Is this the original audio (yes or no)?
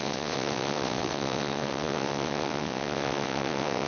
no